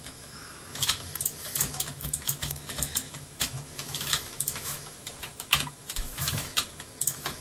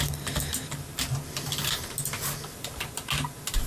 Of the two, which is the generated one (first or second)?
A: first